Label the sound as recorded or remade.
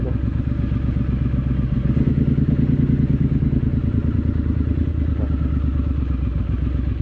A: recorded